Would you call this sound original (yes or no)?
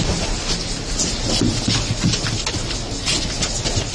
yes